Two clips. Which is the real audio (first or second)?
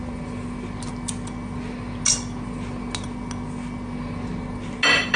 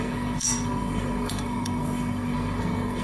first